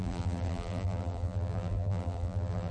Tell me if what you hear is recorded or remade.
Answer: remade